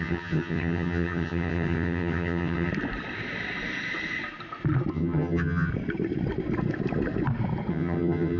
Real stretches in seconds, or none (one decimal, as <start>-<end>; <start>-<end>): 2.7-4.9; 5.7-7.7